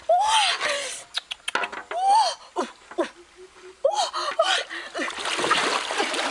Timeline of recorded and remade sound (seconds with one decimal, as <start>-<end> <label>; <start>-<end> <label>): 0.0-6.3 recorded